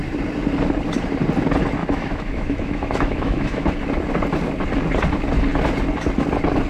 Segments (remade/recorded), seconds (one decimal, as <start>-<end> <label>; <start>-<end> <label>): 0.0-1.8 recorded; 1.8-3.7 remade; 3.7-6.7 recorded